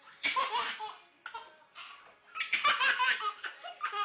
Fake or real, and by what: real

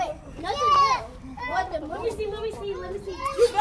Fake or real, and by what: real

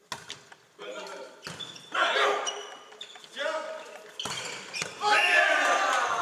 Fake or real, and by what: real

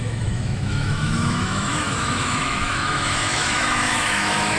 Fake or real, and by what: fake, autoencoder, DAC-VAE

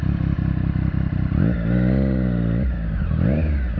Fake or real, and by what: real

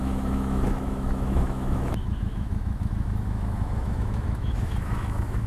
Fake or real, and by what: fake, autoencoder, DAC-VAE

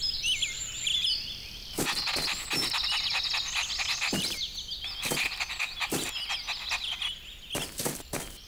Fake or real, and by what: real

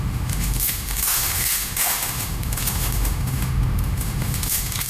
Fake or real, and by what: fake, autoencoder, DAC-VAE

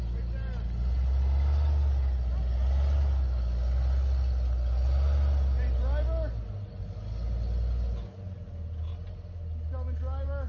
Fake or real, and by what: real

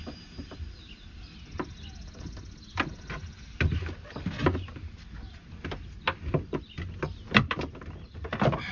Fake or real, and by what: real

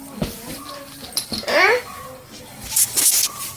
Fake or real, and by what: real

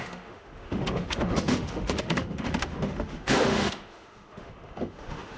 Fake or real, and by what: fake, autoencoder, DAC-VAE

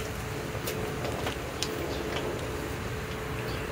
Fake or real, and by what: real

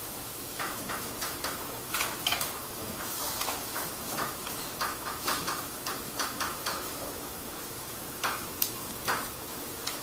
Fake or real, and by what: fake, autoencoder, DAC-VAE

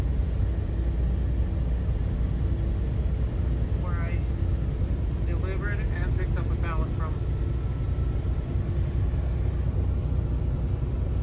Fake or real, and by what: real